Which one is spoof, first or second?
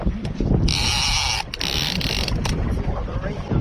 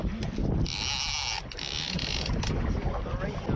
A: first